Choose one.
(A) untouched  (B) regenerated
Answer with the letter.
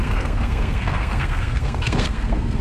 B